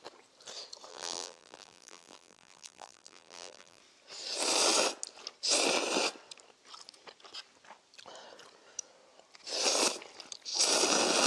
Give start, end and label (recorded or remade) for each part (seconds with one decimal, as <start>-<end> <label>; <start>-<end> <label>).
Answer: 0.0-0.9 recorded; 0.9-3.8 remade; 3.8-11.3 recorded